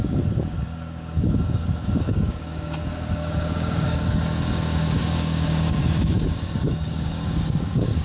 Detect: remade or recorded remade